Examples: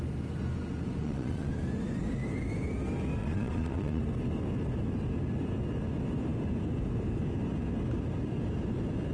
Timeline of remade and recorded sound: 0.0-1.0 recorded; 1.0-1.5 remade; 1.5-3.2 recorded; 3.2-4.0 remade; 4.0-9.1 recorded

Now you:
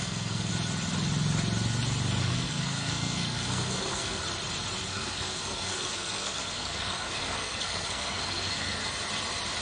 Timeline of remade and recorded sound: 0.0-0.5 remade; 0.5-2.2 recorded; 2.2-4.2 remade; 4.2-4.9 recorded; 4.9-8.8 remade; 8.8-9.6 recorded